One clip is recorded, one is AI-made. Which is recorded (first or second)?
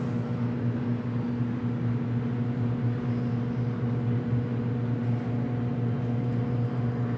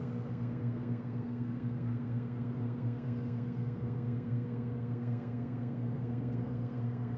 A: first